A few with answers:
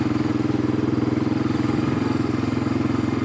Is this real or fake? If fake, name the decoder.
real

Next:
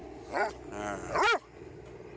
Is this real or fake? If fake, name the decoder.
real